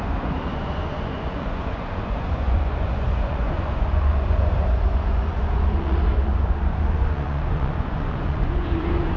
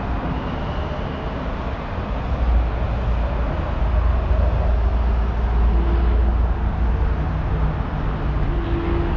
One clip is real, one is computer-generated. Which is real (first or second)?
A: second